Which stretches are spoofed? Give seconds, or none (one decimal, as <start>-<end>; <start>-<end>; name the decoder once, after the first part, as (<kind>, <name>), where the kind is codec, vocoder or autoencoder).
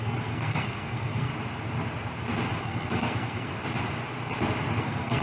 0.0-1.3 (codec, SNAC); 2.6-3.5; 4.8-5.2